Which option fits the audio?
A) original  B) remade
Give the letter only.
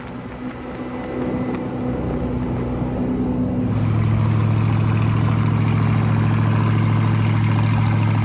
A